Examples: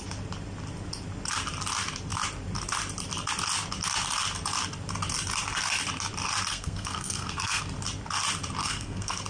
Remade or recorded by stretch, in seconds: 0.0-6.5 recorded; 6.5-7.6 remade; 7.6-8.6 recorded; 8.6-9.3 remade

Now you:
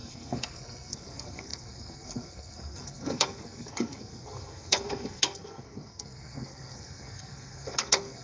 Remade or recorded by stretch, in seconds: 0.0-8.2 remade